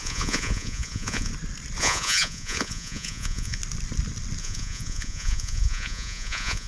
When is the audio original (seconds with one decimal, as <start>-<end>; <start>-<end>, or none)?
1.3-1.8; 3.6-4.4